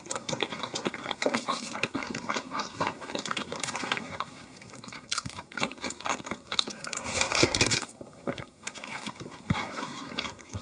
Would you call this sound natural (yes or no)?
no